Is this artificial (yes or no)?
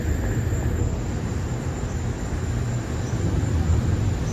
no